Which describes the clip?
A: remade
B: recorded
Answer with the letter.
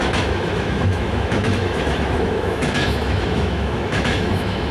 A